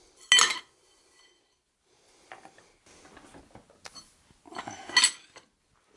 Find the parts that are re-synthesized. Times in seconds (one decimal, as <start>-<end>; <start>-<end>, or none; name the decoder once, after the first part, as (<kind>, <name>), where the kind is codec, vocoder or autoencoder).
none